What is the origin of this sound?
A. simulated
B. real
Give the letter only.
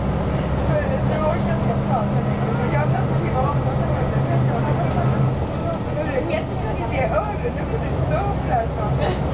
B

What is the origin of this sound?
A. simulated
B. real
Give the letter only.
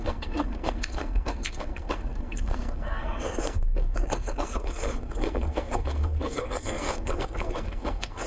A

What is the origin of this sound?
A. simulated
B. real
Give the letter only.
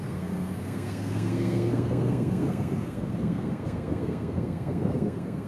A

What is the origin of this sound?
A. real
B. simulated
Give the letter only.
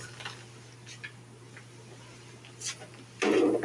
A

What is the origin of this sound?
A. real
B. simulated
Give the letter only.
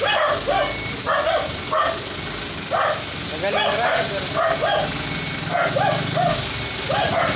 A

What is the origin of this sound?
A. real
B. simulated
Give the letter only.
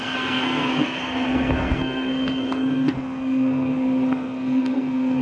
B